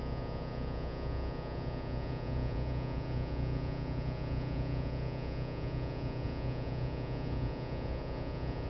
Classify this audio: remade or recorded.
remade